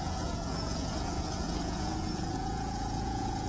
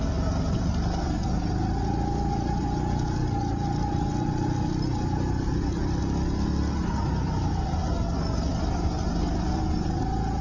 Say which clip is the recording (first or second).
second